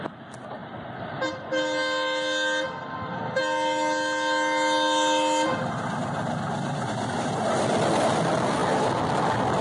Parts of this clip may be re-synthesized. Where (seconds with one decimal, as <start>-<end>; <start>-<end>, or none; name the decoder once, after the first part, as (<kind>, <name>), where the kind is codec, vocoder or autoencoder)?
none